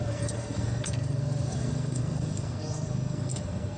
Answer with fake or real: fake